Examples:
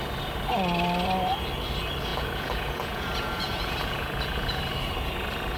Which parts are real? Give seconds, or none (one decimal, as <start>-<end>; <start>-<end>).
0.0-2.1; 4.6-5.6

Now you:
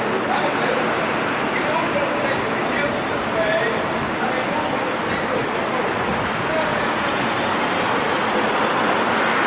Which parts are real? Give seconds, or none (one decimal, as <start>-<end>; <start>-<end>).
0.0-6.7; 7.2-9.5

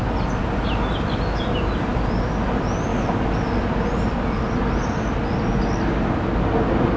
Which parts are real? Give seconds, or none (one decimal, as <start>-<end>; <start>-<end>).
0.0-7.0

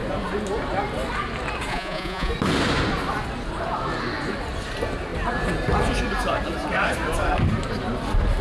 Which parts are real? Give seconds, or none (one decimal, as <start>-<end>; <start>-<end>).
0.0-1.7; 2.3-8.4

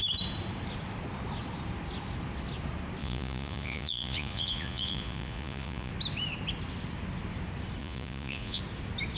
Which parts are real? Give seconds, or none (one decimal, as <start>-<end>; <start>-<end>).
0.0-3.0; 5.9-7.8; 8.6-9.2